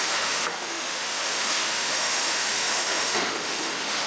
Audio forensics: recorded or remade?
remade